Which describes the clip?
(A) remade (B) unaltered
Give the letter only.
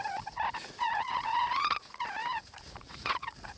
A